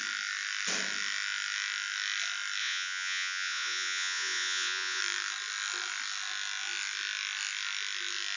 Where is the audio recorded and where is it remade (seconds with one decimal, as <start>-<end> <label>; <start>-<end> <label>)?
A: 0.0-2.6 recorded; 2.6-5.0 remade; 5.0-8.4 recorded

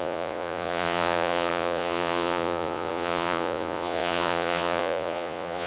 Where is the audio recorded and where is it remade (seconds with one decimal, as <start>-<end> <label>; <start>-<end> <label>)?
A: 0.0-5.7 remade